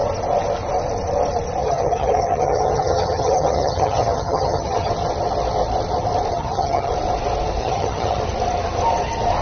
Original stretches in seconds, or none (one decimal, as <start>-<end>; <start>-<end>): 0.0-1.6; 4.9-6.3; 6.9-7.6; 8.2-9.4